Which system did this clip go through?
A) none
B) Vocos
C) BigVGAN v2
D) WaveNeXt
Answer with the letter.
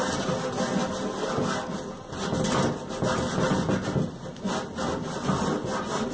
A